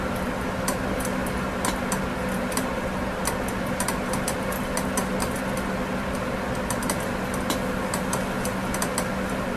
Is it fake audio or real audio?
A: real